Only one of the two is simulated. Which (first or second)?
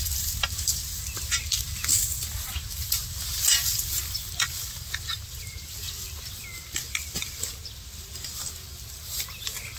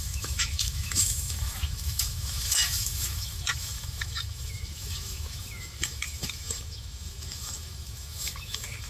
second